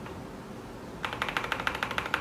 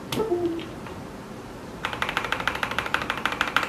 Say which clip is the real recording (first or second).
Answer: first